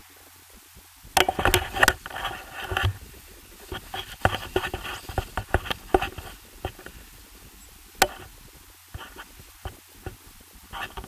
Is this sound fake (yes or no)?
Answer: no